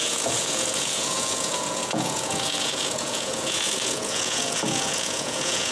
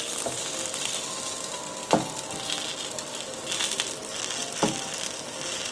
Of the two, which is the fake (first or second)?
first